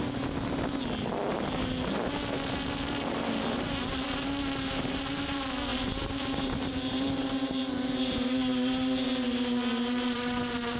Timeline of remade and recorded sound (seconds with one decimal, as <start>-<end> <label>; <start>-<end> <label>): 0.0-5.7 recorded; 5.7-10.8 remade